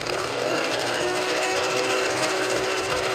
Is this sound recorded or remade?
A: remade